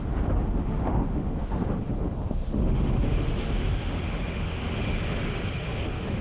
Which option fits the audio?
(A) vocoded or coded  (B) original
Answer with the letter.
A